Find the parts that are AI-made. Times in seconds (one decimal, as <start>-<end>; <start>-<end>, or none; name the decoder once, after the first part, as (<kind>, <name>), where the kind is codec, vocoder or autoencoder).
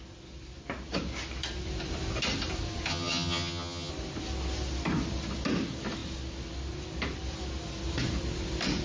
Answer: 2.9-3.9 (vocoder, HiFi-GAN)